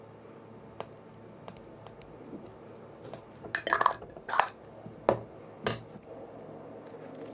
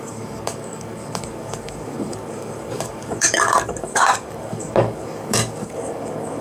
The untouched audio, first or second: first